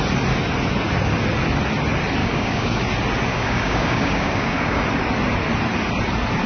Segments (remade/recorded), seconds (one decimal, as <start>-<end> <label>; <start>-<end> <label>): 0.0-2.2 recorded; 2.2-2.8 remade; 2.8-3.3 recorded; 3.3-4.8 remade; 4.8-6.5 recorded